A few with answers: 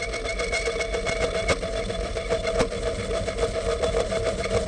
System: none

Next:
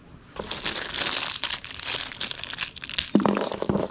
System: none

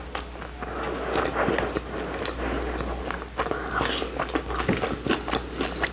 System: none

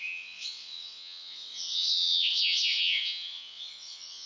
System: vocoder, WaveNeXt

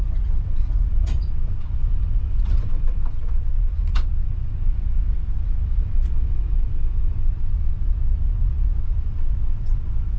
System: vocoder, WaveNeXt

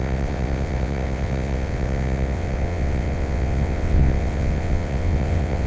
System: vocoder, WaveNeXt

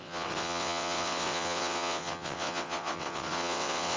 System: vocoder, WaveNeXt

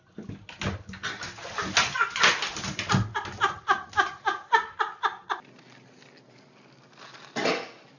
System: none